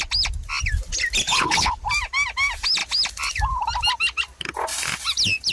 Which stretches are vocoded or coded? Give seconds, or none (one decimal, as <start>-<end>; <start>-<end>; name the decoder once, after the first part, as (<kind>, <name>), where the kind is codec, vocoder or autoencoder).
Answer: 1.3-1.8 (codec, HILCodec)